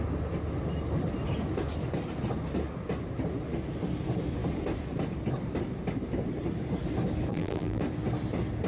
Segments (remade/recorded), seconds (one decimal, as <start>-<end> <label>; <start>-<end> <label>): 0.0-7.3 recorded; 7.3-7.8 remade; 7.8-8.7 recorded